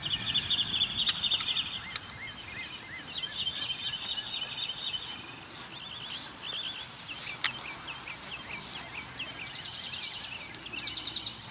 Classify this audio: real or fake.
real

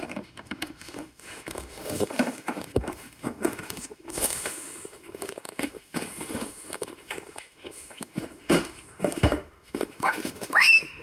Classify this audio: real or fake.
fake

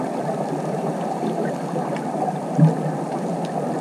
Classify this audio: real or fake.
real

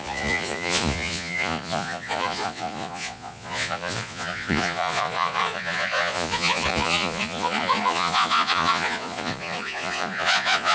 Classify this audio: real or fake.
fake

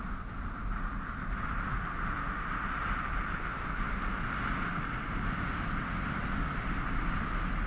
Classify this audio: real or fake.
real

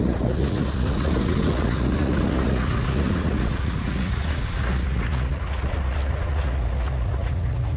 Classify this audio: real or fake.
fake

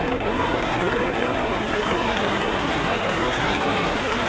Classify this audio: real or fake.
fake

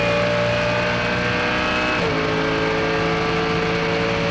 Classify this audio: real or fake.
real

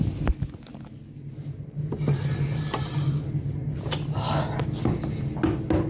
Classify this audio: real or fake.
real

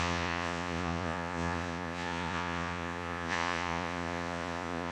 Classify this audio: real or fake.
fake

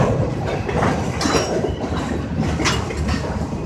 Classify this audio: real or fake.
real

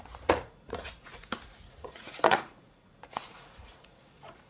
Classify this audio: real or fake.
fake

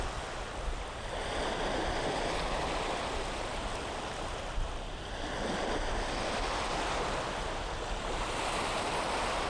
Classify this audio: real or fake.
real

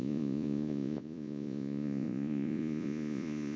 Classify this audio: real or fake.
fake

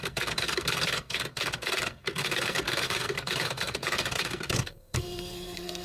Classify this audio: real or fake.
fake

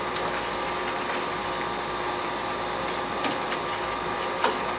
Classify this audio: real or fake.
real